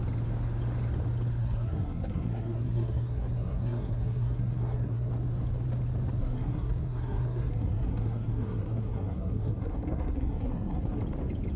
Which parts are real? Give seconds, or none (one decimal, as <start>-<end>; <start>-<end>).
0.0-1.4; 5.1-6.2; 11.0-11.6